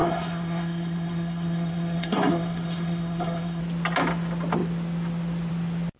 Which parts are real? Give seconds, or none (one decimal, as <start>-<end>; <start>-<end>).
3.6-6.0